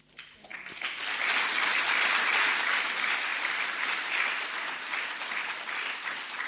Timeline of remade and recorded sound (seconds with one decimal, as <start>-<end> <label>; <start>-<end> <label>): 0.0-3.3 recorded; 3.3-4.8 remade; 4.8-6.5 recorded